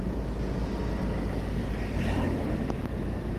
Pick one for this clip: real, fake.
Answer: real